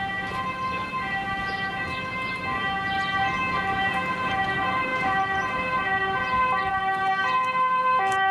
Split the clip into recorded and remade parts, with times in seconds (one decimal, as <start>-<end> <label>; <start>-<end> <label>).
0.0-8.3 recorded